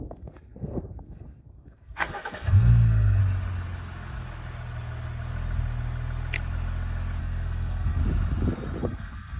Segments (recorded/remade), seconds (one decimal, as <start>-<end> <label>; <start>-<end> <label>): 0.0-3.2 remade; 3.2-7.2 recorded; 7.2-8.0 remade; 8.0-8.8 recorded; 8.8-9.4 remade